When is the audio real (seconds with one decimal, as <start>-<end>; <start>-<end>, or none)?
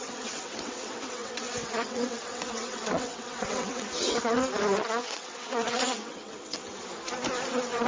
4.4-4.9; 6.6-7.9